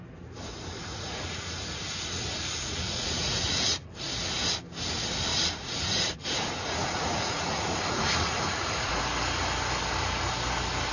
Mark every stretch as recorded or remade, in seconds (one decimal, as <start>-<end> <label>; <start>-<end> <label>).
0.0-0.9 recorded; 0.9-4.1 remade; 4.1-5.3 recorded; 5.3-9.0 remade; 9.0-10.9 recorded